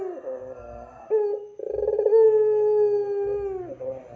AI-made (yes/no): no